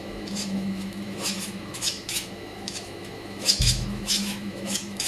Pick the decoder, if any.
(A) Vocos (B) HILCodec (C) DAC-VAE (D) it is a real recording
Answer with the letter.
C